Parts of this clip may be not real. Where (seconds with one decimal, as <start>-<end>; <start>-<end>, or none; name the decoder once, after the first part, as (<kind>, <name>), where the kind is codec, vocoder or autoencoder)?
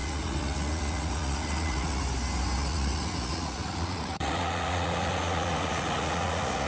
0.0-2.0 (vocoder, Vocos); 2.6-6.7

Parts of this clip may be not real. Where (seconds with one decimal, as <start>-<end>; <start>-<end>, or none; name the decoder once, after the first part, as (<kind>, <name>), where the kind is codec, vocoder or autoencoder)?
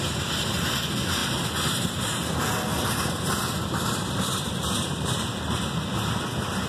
1.2-2.0 (vocoder, BigVGAN v2); 2.7-5.4